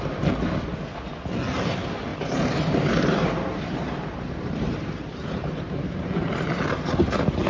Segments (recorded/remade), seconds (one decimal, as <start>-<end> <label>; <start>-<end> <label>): 0.0-2.1 recorded; 2.1-6.6 remade; 6.6-7.5 recorded